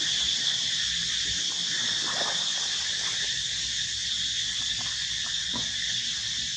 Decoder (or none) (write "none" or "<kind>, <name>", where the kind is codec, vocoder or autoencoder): none